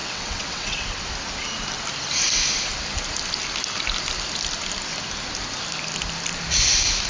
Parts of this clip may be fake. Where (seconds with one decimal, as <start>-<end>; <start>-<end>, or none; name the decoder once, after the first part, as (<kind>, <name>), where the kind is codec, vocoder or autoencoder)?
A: 0.0-1.0 (vocoder, WaveNeXt)